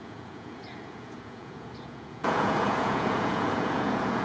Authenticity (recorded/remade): remade